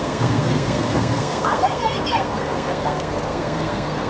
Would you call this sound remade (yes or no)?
yes